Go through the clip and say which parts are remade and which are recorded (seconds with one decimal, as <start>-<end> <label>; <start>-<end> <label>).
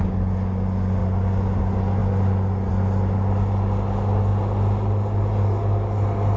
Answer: 0.0-6.4 recorded